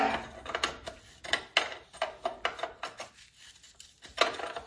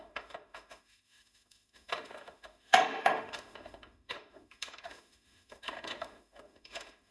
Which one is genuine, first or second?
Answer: first